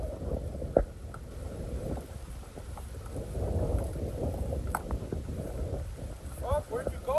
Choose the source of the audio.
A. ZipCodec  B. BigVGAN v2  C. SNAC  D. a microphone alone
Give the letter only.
D